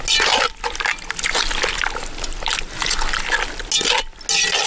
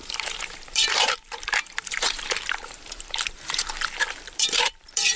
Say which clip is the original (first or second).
first